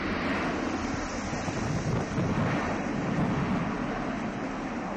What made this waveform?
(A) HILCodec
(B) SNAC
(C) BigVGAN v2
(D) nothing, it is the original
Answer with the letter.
D